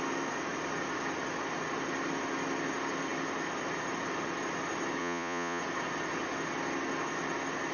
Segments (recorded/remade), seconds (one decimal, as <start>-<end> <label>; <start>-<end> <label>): 0.0-5.0 recorded; 5.0-5.6 remade; 5.6-7.7 recorded